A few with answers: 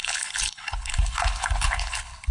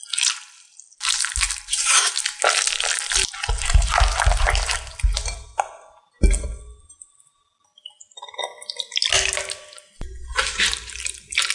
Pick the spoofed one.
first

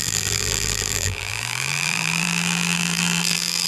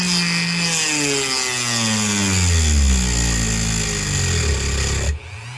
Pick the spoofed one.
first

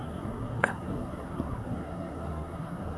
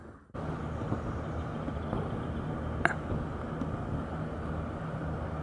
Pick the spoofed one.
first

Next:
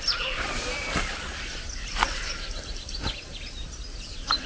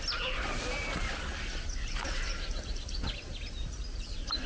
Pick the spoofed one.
first